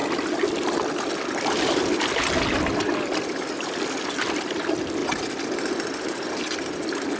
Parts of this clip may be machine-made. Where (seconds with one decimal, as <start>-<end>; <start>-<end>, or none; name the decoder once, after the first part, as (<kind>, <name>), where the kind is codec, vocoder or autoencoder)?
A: none